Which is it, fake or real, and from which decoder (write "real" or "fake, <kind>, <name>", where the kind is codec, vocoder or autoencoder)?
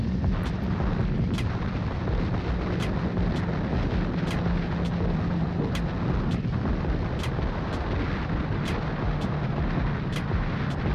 real